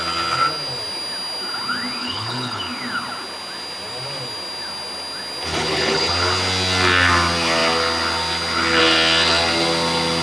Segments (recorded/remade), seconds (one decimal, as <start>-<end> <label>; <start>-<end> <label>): 0.0-2.0 recorded; 2.0-2.6 remade; 2.6-5.5 recorded; 5.5-6.1 remade; 6.1-10.2 recorded